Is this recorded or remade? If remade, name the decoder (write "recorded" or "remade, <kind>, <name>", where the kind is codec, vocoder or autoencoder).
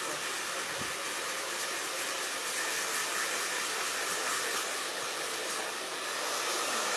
recorded